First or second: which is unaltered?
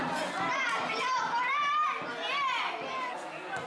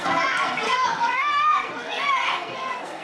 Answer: first